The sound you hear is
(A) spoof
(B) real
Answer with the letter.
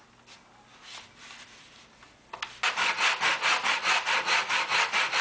B